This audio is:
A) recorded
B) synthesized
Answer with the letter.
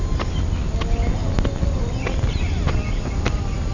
A